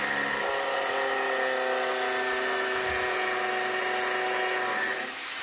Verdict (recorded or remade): recorded